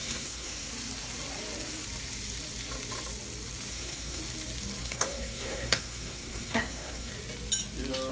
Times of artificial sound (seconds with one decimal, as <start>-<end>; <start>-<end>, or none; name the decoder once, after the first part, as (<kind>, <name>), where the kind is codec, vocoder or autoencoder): 0.0-0.7 (codec, SNAC); 3.7-4.2; 4.8-7.1